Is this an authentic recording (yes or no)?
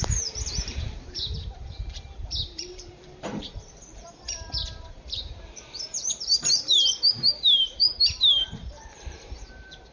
no